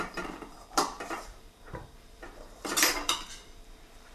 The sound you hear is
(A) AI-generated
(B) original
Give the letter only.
A